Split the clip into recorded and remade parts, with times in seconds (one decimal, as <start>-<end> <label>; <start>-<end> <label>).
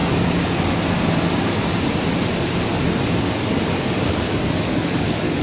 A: 0.0-3.2 recorded; 3.2-5.4 remade